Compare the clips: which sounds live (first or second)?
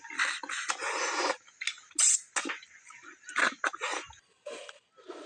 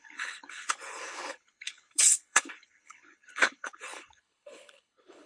first